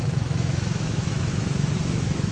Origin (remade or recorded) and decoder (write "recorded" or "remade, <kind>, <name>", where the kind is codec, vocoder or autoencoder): remade, autoencoder, DAC-VAE